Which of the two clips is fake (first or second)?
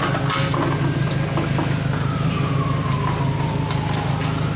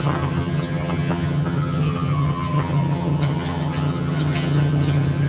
second